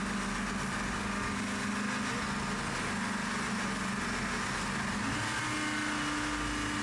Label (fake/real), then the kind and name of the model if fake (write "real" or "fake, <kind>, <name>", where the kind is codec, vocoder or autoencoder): real